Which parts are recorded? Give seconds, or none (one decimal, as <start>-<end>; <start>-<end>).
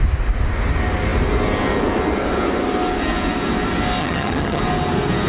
0.0-4.0; 4.6-5.3